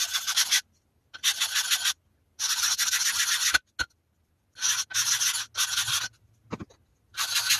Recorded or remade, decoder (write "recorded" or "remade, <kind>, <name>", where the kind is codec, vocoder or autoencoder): recorded